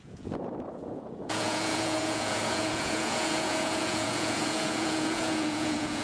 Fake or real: fake